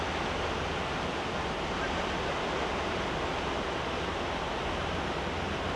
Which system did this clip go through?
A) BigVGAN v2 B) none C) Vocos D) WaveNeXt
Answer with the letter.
B